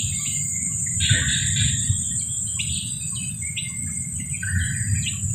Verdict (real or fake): real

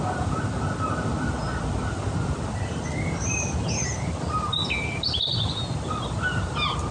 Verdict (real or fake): real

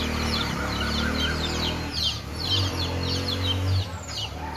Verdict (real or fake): real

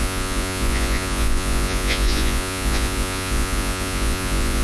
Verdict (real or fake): fake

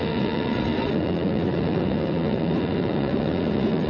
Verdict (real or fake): fake